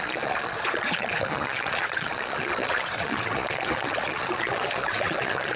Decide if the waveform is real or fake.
fake